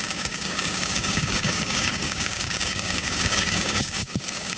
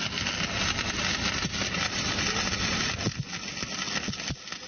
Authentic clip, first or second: second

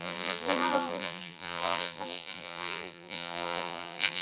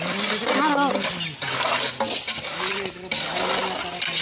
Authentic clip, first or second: second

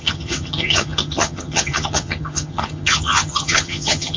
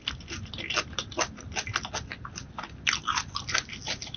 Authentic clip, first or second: second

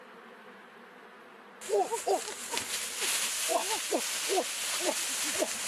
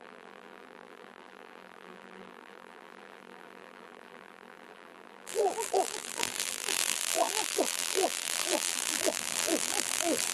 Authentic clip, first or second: first